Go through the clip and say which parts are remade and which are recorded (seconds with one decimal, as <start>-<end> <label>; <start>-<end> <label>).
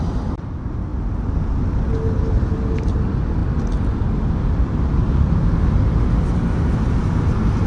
0.0-7.7 recorded